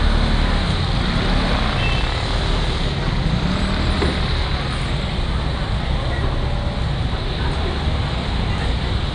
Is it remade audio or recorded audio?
recorded